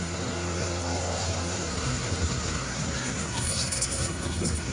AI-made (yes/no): yes